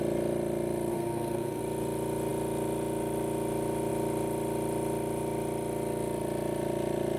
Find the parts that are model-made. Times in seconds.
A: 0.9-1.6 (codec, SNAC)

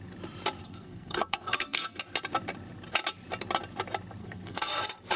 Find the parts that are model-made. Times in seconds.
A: 0.6-2.0 (codec, SNAC); 4.2-4.8

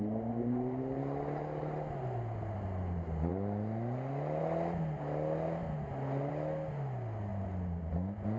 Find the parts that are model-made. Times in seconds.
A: none

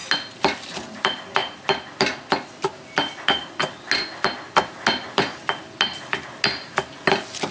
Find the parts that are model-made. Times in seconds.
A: none